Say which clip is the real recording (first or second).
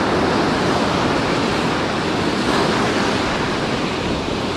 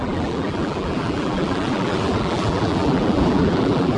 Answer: first